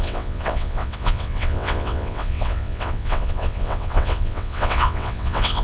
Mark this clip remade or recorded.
remade